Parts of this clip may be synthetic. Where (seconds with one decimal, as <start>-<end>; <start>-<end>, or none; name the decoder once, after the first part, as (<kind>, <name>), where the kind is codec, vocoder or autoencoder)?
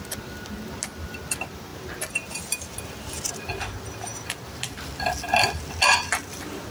none